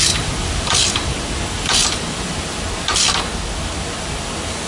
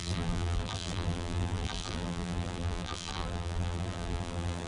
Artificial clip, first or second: second